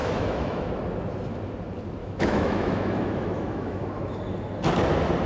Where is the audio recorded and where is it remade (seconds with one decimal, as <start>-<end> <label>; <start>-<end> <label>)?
0.0-0.7 remade; 0.7-2.0 recorded; 2.0-4.2 remade; 4.2-5.3 recorded